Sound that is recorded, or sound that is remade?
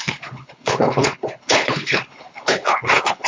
remade